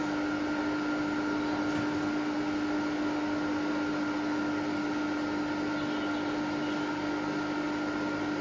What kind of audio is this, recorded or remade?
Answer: recorded